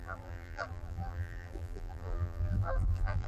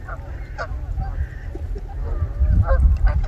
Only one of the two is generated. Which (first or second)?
first